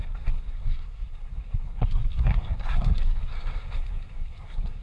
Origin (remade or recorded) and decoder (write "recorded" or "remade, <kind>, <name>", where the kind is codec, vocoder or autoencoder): remade, codec, SNAC